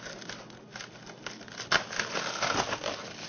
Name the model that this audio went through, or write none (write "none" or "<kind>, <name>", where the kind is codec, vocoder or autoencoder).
none